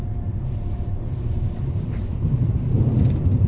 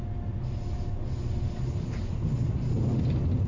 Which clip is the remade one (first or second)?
first